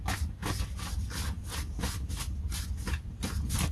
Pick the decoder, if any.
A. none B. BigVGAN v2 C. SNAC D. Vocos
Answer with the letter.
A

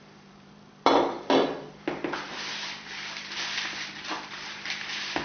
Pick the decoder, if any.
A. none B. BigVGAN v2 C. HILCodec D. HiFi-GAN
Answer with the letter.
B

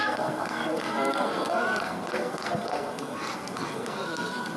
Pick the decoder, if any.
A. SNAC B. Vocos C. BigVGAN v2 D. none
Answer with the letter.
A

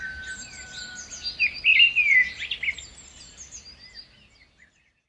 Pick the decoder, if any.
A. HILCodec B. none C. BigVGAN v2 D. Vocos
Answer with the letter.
B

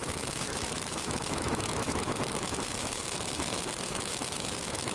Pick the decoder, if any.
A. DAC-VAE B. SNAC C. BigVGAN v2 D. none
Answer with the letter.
A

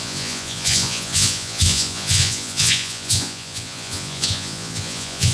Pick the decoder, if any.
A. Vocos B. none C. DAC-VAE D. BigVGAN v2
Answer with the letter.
A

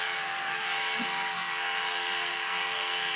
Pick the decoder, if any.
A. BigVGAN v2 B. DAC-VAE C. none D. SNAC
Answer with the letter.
D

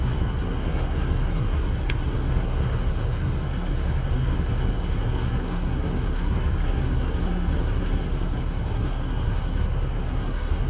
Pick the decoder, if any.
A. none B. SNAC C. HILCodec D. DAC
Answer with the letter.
B